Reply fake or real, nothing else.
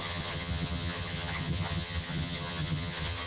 fake